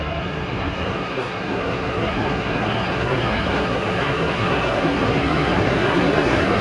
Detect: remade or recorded remade